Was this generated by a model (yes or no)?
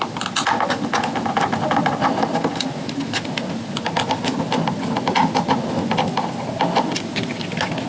no